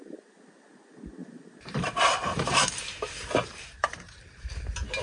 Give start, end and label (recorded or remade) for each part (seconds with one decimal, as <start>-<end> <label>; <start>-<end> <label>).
0.0-1.2 recorded; 1.2-4.2 remade; 4.2-5.0 recorded